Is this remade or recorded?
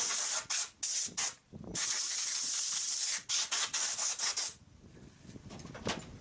recorded